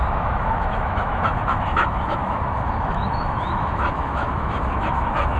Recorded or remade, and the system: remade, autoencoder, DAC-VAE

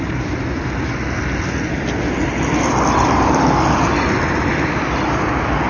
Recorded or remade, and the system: recorded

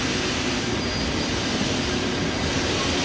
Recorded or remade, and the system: recorded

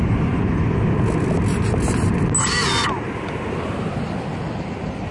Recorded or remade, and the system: recorded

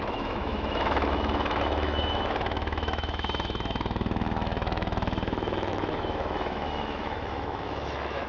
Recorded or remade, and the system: remade, autoencoder, DAC-VAE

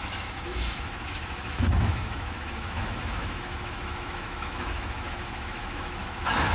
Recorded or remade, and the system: remade, autoencoder, DAC-VAE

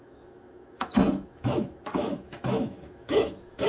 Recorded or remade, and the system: remade, autoencoder, DAC-VAE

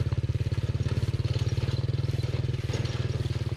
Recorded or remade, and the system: recorded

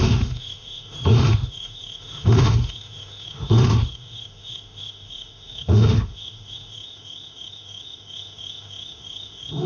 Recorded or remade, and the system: remade, autoencoder, DAC-VAE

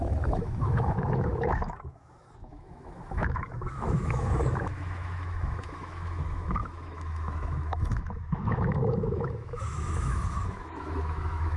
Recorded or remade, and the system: remade, autoencoder, DAC-VAE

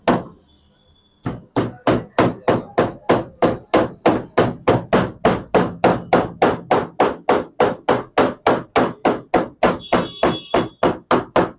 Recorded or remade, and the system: recorded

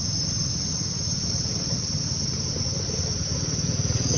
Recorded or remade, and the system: recorded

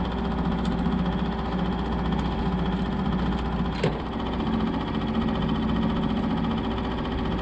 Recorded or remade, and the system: recorded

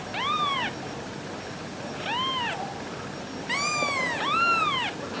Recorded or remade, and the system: recorded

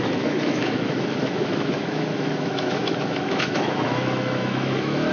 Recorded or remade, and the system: remade, autoencoder, DAC-VAE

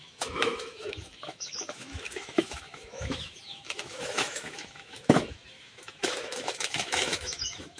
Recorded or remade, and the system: remade, autoencoder, DAC-VAE